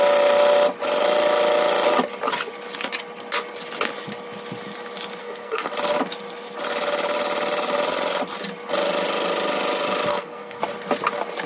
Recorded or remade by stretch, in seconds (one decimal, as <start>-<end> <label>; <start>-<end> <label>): 0.0-5.2 recorded; 5.2-5.7 remade; 5.7-10.1 recorded; 10.1-10.6 remade; 10.6-11.5 recorded